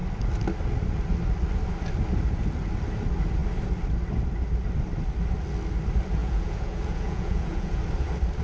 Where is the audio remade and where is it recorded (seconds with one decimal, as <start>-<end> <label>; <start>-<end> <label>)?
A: 0.0-6.2 recorded; 6.2-7.8 remade; 7.8-8.4 recorded